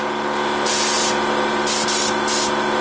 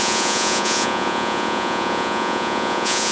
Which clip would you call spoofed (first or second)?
second